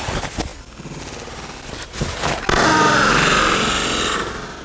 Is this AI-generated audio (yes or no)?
no